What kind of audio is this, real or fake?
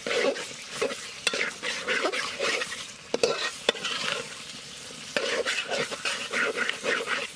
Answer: fake